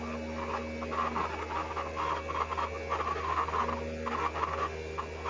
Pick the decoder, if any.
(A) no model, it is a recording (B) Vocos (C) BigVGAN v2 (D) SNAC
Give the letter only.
A